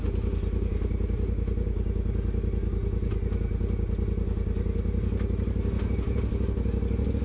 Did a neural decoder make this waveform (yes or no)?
no